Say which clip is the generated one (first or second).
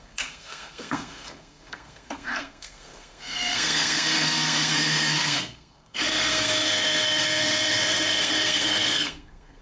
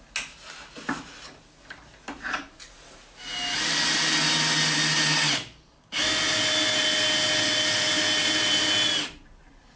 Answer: first